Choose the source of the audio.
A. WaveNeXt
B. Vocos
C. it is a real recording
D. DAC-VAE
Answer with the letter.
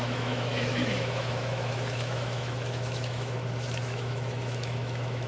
D